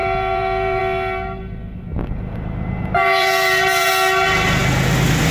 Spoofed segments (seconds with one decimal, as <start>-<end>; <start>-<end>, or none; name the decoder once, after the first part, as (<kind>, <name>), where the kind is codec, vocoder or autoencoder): 0.0-0.8 (vocoder, BigVGAN v2); 1.9-3.9